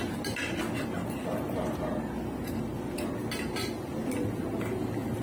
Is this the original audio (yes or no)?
yes